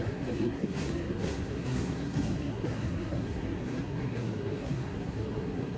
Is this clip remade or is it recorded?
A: remade